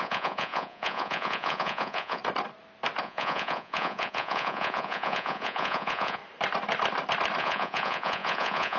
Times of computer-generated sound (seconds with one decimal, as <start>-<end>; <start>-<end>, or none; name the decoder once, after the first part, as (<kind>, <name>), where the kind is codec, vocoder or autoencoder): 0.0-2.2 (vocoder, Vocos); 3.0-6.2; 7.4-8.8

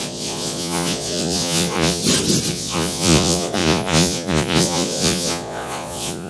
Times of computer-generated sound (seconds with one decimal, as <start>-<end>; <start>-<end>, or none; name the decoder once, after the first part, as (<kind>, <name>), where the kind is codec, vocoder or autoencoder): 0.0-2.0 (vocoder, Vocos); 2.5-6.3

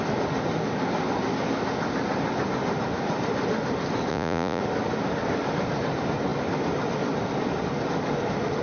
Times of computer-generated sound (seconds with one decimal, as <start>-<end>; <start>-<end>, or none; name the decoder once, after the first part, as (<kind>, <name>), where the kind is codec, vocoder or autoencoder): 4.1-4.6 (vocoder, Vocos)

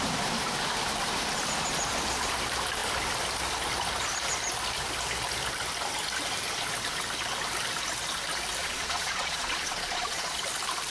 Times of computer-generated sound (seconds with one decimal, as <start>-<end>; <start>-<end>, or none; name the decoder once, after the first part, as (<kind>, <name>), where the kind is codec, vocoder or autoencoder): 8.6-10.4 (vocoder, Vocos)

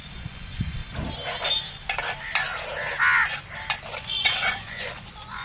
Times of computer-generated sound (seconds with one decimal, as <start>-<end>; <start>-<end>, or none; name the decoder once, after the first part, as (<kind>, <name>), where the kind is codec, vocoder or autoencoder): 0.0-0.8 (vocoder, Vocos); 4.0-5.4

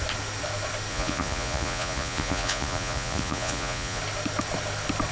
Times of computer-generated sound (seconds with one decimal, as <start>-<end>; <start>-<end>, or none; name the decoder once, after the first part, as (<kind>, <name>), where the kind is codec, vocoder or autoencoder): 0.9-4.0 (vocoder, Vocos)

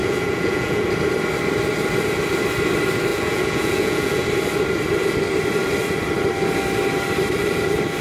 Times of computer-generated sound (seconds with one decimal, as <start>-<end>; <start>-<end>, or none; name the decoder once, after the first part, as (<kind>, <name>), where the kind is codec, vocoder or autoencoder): 0.0-0.9 (vocoder, Vocos); 3.1-4.2